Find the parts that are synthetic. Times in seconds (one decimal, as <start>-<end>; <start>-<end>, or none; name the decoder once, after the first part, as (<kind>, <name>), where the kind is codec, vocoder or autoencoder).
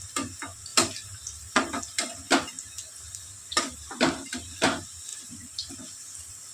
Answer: 0.7-1.8 (vocoder, BigVGAN v2); 5.1-5.7